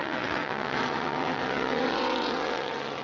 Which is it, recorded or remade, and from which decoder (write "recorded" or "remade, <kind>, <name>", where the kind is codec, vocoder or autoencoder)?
remade, vocoder, WaveNeXt